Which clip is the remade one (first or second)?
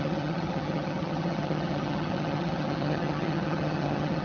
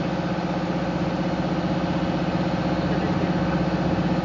first